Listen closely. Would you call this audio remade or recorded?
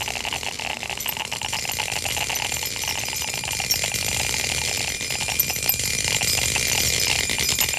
recorded